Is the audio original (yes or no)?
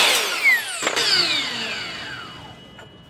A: yes